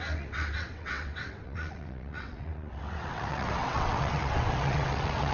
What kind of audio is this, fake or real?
fake